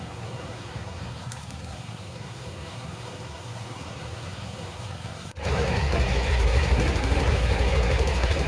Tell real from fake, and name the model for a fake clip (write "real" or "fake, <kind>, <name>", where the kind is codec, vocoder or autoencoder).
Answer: fake, codec, SNAC